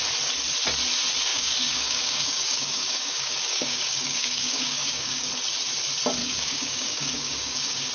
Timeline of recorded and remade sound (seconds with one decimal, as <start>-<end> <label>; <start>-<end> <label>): 0.0-1.3 recorded; 1.3-5.3 remade; 5.3-6.2 recorded; 6.2-7.9 remade